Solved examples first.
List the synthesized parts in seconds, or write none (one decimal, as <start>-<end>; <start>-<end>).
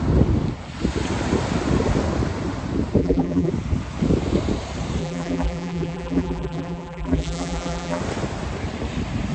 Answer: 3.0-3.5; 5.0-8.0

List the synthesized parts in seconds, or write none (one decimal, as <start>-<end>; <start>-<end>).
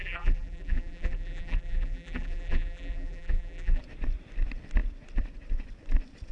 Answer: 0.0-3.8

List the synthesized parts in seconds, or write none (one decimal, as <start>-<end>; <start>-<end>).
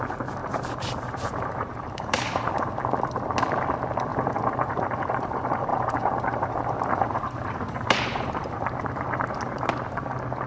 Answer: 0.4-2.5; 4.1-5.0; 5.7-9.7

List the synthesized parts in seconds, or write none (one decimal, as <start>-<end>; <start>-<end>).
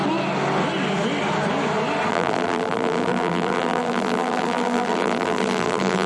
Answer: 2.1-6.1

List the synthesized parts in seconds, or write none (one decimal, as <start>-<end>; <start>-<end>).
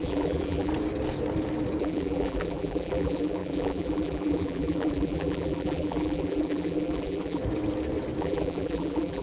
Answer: 0.0-0.7; 1.8-7.4; 8.2-9.2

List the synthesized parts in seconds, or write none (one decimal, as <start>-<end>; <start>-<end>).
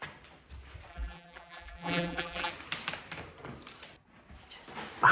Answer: 0.9-2.5